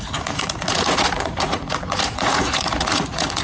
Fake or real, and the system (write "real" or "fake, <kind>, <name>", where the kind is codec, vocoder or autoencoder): fake, vocoder, Vocos